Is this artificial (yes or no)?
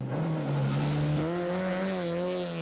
no